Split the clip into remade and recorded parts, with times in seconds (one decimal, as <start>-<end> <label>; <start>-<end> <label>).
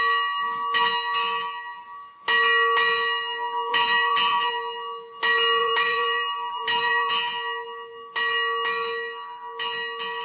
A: 0.0-3.7 recorded; 3.7-4.5 remade; 4.5-5.6 recorded; 5.6-7.1 remade; 7.1-10.2 recorded